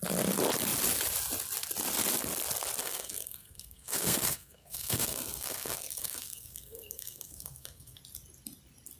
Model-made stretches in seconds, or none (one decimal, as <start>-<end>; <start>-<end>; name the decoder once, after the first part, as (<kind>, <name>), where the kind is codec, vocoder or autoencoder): 2.8-8.0 (codec, SNAC)